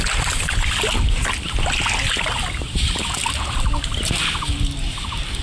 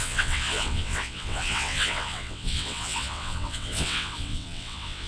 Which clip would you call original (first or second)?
first